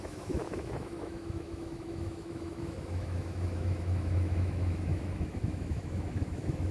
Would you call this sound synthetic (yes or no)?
yes